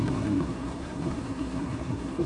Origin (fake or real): fake